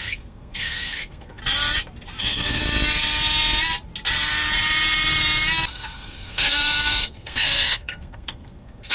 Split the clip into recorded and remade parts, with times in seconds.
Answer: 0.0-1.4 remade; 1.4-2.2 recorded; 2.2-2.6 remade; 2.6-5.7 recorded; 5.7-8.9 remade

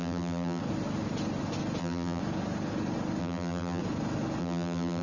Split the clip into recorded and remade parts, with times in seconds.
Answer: 0.0-0.6 remade; 0.6-1.8 recorded; 1.8-2.2 remade; 2.2-3.2 recorded; 3.2-3.8 remade; 3.8-4.4 recorded; 4.4-5.0 remade

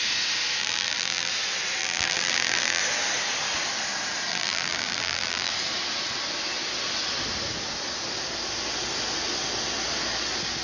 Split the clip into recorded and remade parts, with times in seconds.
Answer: 0.0-0.6 recorded; 0.6-1.3 remade; 1.3-1.8 recorded; 1.8-2.8 remade; 2.8-4.3 recorded; 4.3-5.5 remade; 5.5-10.6 recorded